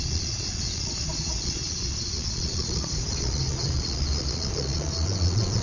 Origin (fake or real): fake